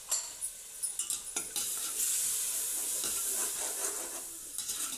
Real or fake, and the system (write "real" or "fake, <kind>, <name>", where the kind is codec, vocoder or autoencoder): real